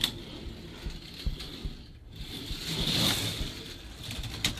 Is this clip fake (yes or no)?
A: no